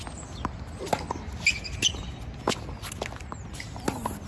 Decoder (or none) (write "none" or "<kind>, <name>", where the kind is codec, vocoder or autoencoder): none